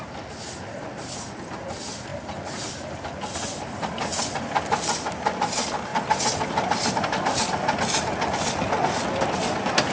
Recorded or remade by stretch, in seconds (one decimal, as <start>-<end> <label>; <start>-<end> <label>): 0.0-9.9 recorded